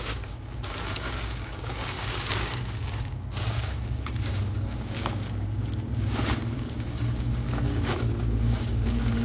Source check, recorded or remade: remade